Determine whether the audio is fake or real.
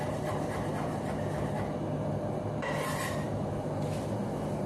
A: real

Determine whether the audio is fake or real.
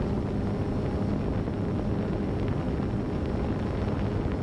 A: real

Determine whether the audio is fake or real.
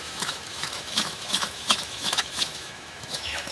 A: fake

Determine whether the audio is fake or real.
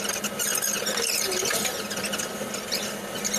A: real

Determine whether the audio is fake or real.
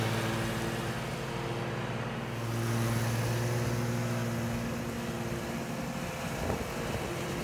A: real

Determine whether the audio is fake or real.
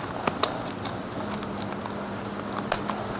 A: real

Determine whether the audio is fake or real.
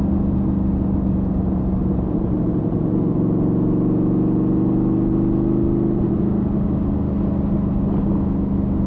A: real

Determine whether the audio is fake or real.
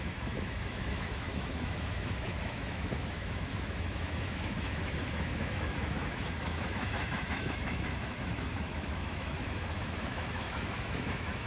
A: fake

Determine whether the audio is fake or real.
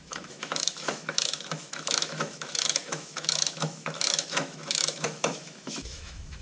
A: fake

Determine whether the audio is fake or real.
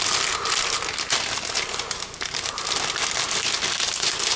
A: real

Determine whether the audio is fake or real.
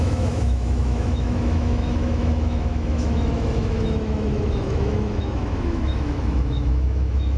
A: fake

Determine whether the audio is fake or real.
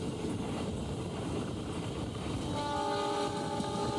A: real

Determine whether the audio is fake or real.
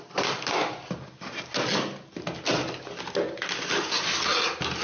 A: real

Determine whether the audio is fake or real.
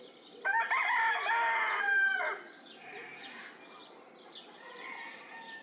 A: real